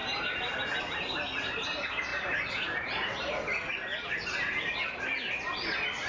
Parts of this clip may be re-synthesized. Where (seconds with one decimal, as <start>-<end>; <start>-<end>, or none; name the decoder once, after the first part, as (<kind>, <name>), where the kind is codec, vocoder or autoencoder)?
none